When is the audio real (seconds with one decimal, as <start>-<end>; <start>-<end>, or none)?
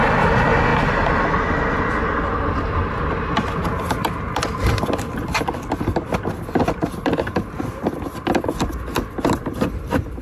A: 0.0-10.2